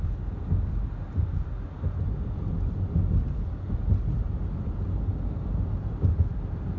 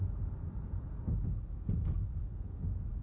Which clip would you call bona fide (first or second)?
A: first